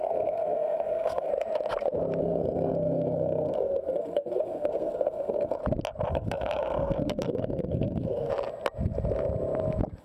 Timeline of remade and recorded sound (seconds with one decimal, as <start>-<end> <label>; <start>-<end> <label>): 0.0-1.3 remade; 1.3-2.2 recorded; 2.2-5.6 remade; 5.6-6.1 recorded; 6.1-8.3 remade; 8.3-10.0 recorded